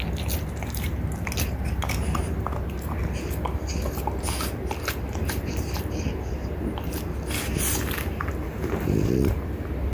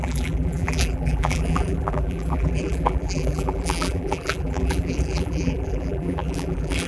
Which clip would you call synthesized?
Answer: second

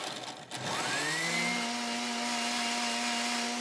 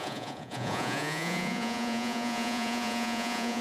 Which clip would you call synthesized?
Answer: second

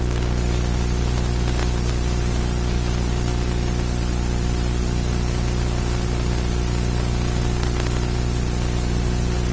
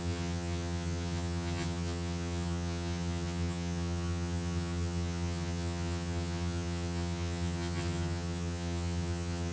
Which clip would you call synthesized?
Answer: second